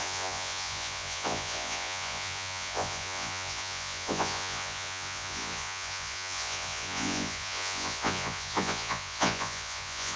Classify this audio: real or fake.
fake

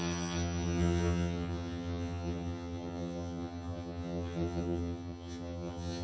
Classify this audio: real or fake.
fake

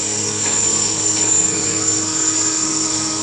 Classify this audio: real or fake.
fake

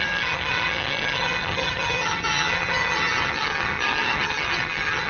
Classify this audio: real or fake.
fake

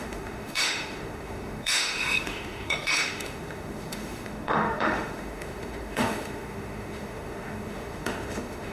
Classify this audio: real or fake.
fake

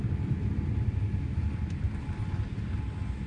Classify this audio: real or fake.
real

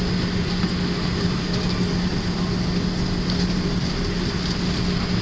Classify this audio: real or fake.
real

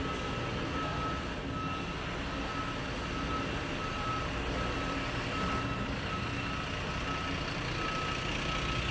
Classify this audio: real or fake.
real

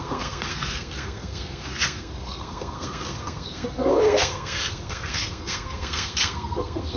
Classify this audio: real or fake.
fake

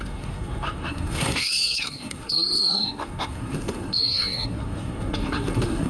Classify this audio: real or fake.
fake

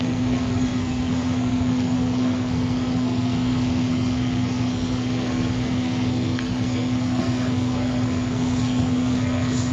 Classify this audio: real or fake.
fake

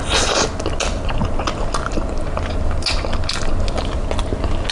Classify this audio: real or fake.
real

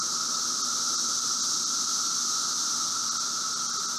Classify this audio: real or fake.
real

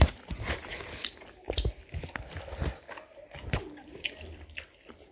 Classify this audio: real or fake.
real